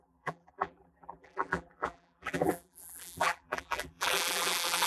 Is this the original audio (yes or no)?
no